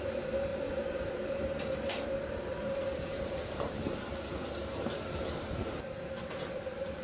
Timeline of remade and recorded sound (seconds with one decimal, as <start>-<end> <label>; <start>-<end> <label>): 0.0-7.0 remade